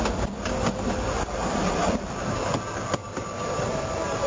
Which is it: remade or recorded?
recorded